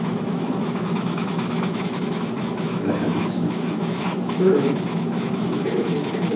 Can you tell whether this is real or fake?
fake